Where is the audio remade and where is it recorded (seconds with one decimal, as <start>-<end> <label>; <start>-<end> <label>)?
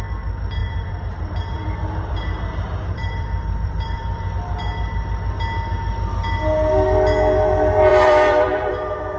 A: 0.0-0.6 recorded; 0.6-4.3 remade; 4.3-7.9 recorded; 7.9-8.7 remade; 8.7-9.2 recorded